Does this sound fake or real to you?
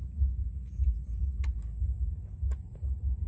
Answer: real